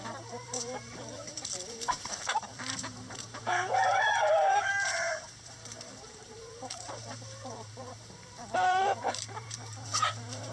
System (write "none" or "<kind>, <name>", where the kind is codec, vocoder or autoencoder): vocoder, BigVGAN v2